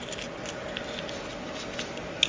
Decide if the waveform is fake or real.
real